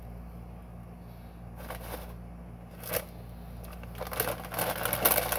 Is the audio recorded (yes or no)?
yes